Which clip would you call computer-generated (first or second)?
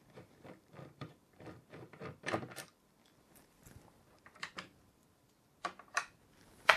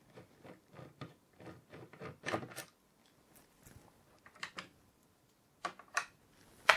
first